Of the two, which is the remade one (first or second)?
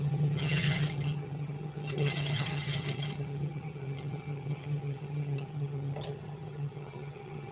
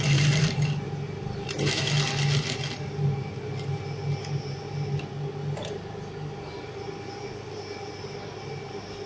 first